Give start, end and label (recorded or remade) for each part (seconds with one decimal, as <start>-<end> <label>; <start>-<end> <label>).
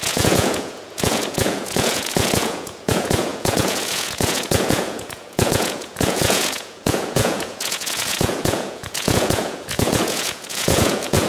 0.0-11.3 remade